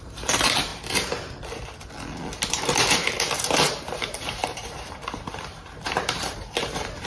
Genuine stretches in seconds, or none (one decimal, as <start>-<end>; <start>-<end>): 0.7-2.5